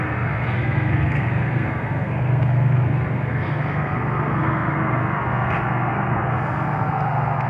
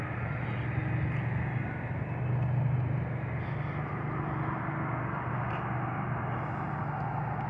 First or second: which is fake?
first